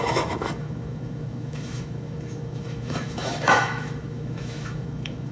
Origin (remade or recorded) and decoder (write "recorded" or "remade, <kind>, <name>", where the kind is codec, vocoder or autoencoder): remade, autoencoder, DAC-VAE